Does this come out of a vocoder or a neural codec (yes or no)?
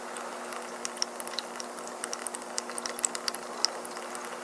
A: no